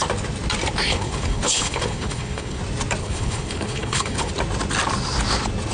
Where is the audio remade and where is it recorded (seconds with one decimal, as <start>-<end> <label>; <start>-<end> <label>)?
0.0-0.9 recorded; 0.9-2.6 remade; 2.6-3.0 recorded; 3.0-4.3 remade; 4.3-5.7 recorded